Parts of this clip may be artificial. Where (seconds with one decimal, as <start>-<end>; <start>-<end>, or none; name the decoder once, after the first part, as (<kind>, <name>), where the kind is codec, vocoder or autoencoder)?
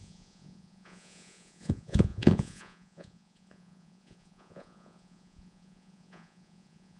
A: 0.0-7.0 (vocoder, Vocos)